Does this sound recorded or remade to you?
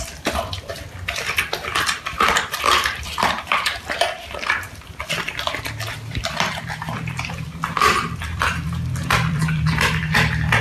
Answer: remade